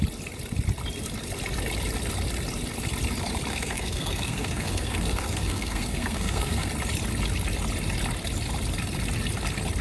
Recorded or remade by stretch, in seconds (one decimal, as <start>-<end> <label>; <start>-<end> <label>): 0.0-3.5 recorded; 3.5-6.7 remade; 6.7-9.8 recorded